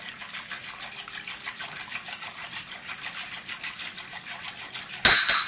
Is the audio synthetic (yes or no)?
no